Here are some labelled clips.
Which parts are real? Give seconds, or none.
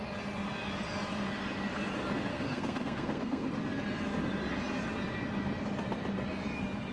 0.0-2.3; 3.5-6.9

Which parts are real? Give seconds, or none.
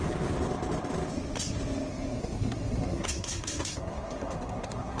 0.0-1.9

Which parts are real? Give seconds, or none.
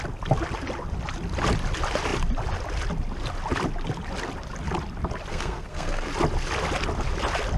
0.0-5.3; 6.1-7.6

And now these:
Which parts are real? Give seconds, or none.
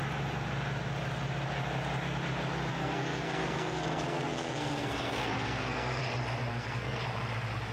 0.0-2.7; 6.0-6.5; 7.0-7.7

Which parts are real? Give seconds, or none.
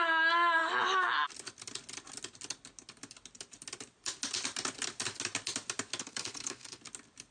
0.0-6.0; 6.8-7.3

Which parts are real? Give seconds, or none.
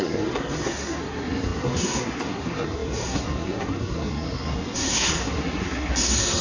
none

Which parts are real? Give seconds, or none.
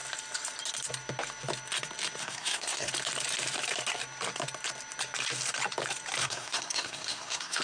0.0-2.2; 2.9-6.2